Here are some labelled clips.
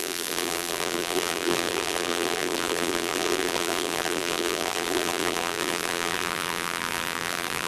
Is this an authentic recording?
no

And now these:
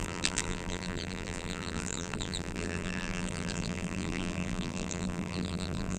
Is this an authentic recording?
no